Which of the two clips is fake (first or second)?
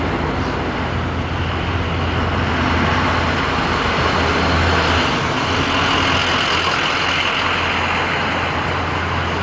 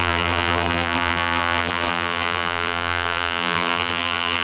second